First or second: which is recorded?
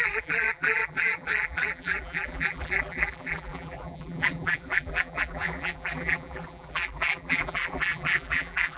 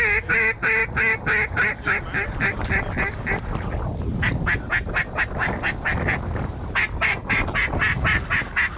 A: second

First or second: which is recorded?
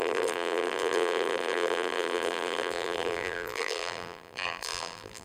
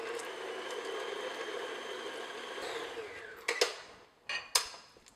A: second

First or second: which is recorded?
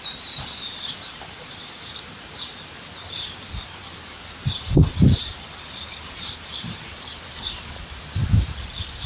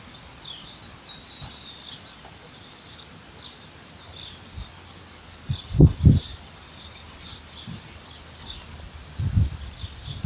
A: second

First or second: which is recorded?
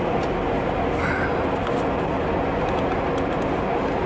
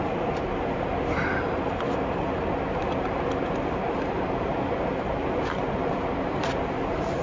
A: first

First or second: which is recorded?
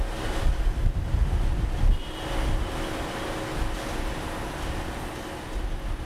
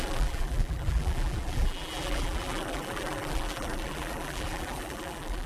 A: first